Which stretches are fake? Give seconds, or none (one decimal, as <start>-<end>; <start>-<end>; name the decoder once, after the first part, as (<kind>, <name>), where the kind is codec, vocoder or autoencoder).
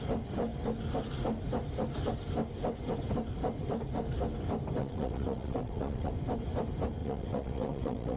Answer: 4.8-6.1 (vocoder, WaveNeXt); 7.0-8.2